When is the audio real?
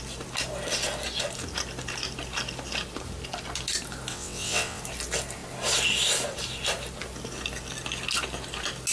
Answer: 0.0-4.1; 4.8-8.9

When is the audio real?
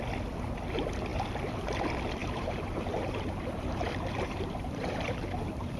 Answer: 0.0-2.2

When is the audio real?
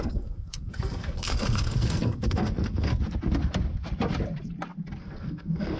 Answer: 2.9-5.0